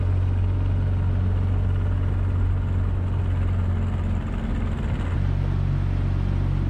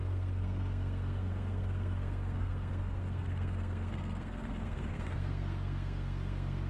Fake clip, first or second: second